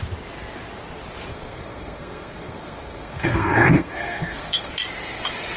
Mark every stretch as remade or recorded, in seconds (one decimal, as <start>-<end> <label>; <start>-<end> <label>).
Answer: 0.0-1.3 recorded; 1.3-4.7 remade; 4.7-5.6 recorded